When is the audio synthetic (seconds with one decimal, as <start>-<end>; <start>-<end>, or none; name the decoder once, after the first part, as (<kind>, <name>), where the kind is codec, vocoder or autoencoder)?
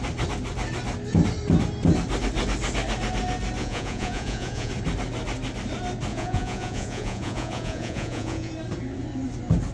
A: 3.6-4.7 (vocoder, Vocos); 6.1-8.5